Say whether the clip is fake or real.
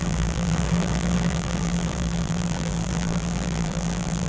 fake